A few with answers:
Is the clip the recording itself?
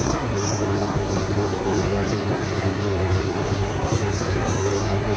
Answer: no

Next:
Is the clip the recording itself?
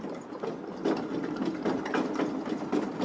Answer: no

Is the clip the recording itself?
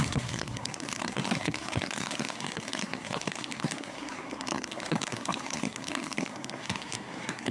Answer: no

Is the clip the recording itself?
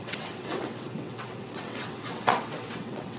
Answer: no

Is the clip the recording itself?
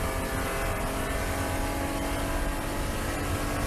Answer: yes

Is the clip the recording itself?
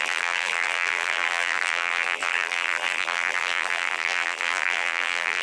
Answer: no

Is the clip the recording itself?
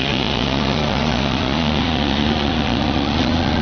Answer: no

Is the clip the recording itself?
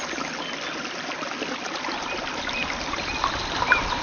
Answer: yes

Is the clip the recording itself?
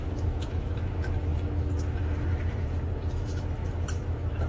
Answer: no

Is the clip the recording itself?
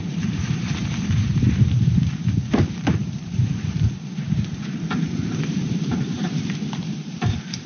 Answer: no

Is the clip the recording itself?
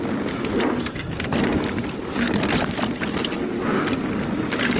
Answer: yes